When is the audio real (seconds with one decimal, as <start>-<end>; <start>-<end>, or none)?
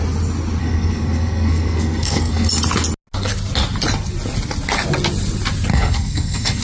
0.0-0.6; 2.5-5.7